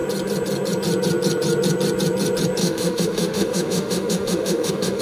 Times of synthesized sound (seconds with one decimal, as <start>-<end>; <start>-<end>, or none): 2.6-5.0